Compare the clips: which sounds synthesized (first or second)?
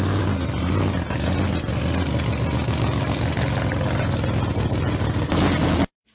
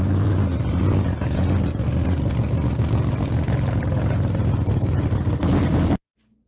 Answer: second